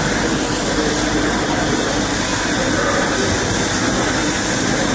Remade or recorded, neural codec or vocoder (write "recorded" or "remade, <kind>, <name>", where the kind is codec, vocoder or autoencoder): recorded